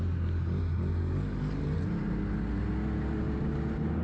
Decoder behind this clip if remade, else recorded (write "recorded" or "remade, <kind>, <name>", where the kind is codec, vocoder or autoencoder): recorded